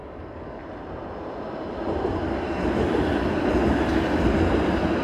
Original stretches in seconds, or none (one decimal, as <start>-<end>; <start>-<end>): 0.6-5.0

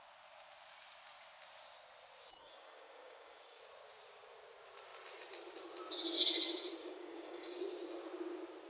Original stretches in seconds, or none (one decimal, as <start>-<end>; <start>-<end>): 0.0-2.3; 3.6-6.8; 7.6-8.7